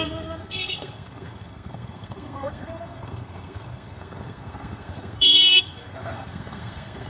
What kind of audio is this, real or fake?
fake